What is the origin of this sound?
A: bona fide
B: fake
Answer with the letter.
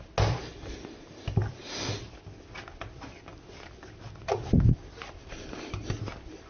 A